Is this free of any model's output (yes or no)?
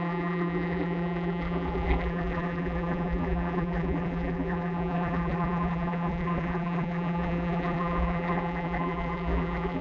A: no